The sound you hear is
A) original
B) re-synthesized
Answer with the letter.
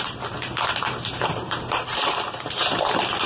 B